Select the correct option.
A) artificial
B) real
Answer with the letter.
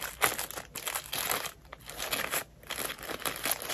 B